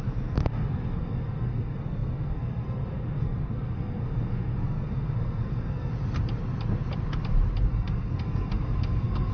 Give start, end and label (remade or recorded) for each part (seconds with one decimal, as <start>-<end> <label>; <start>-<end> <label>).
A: 0.0-5.9 remade; 5.9-7.7 recorded; 7.7-9.3 remade